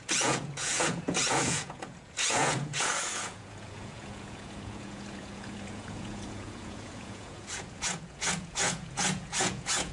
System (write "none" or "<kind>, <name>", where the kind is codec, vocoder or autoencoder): vocoder, Vocos